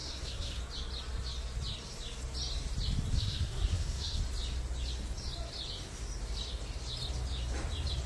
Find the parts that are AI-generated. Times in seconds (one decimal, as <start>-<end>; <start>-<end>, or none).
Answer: 0.0-0.6; 3.1-4.2